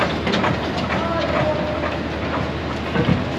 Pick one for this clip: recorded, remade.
recorded